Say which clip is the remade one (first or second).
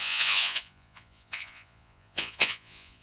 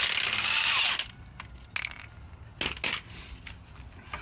first